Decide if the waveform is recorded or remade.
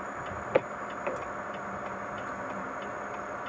recorded